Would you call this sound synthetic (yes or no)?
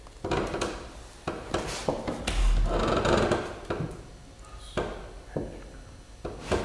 no